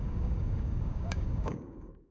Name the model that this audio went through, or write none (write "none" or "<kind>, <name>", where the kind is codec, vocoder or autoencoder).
codec, DAC